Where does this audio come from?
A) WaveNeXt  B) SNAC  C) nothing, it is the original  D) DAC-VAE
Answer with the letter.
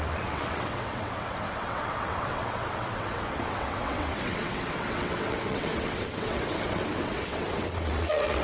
A